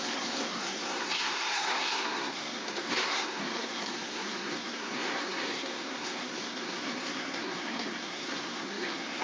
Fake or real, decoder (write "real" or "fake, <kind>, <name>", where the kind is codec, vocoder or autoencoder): fake, codec, SNAC